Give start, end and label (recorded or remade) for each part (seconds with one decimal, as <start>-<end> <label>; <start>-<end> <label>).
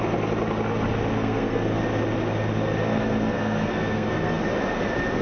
0.0-1.2 recorded; 1.2-1.8 remade; 1.8-2.9 recorded; 2.9-4.4 remade; 4.4-5.2 recorded